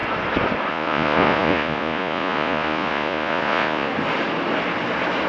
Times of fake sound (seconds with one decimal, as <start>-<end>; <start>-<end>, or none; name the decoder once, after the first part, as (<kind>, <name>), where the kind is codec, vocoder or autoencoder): 0.7-3.9 (vocoder, Vocos)